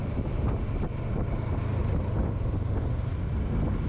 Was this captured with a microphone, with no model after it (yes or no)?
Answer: yes